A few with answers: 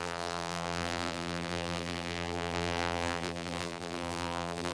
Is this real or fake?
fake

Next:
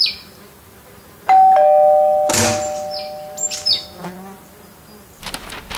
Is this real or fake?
real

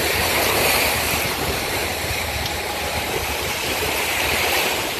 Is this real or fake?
fake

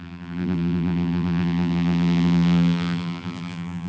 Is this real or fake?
fake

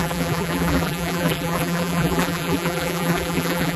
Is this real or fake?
fake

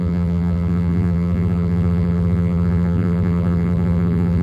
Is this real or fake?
fake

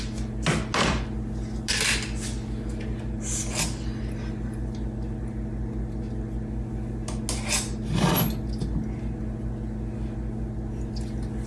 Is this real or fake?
real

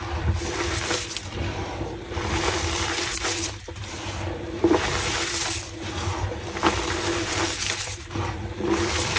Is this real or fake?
fake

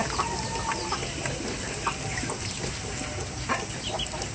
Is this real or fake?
real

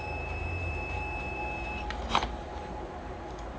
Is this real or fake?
fake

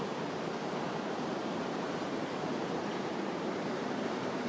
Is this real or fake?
fake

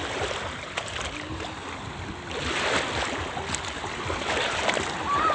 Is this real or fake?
real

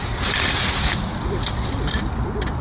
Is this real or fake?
fake